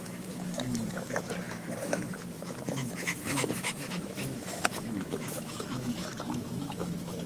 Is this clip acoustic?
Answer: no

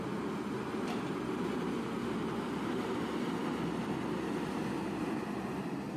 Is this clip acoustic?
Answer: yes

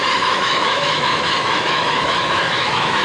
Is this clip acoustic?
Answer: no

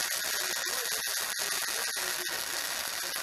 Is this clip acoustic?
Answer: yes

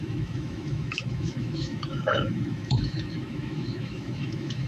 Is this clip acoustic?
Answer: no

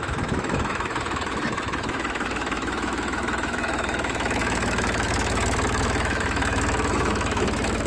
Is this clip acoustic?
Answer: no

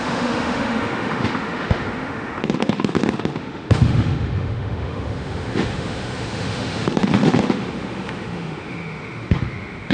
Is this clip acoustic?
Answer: no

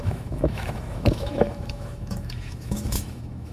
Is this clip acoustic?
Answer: no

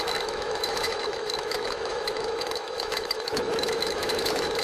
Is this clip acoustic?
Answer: no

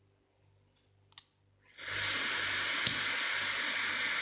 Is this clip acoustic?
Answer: yes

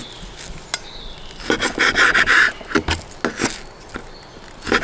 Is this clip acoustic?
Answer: yes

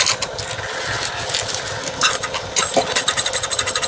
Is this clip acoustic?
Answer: yes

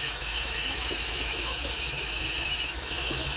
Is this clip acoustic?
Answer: no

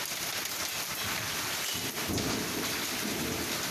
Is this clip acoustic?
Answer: yes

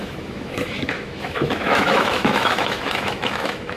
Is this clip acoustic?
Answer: no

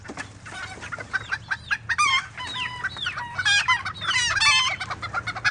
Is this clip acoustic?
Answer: yes